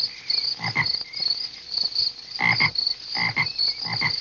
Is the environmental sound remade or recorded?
recorded